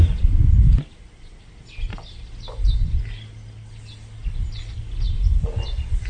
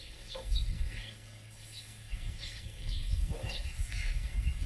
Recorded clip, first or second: first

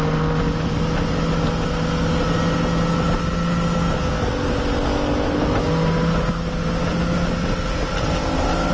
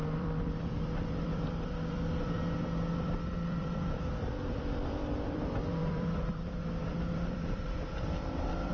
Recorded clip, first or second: first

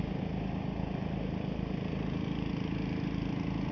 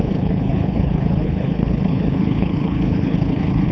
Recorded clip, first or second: first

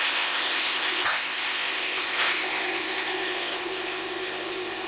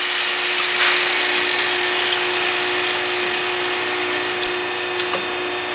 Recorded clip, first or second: second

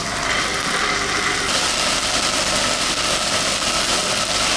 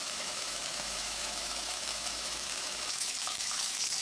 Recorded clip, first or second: first